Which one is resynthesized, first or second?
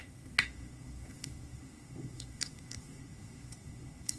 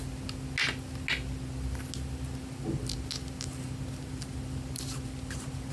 first